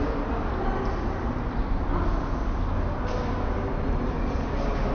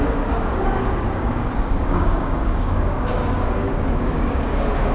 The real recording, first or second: first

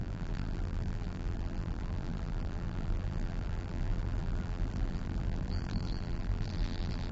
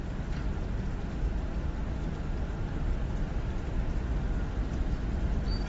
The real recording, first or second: second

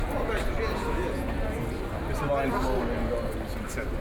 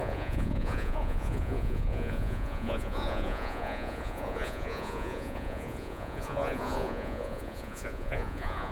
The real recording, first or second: first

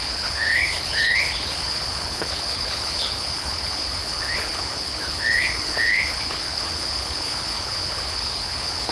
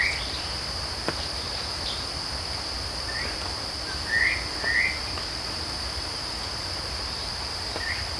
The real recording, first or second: second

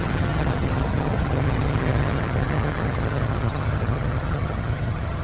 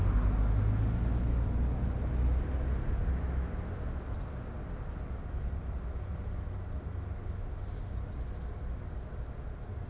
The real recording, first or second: second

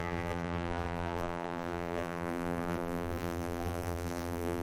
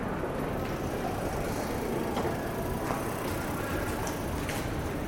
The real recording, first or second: second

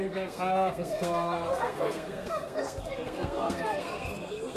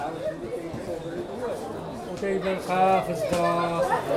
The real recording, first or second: second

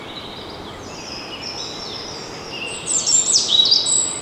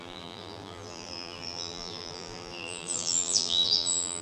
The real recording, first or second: first